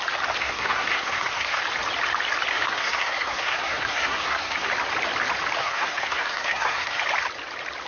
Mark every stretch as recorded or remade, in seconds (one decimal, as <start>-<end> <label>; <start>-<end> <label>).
0.0-0.4 recorded; 0.4-1.6 remade; 1.6-2.5 recorded; 2.5-4.7 remade; 4.7-5.6 recorded; 5.6-7.0 remade; 7.0-7.9 recorded